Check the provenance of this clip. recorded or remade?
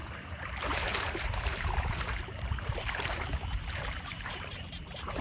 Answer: remade